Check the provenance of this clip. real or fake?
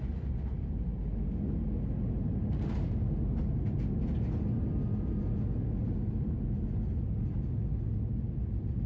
real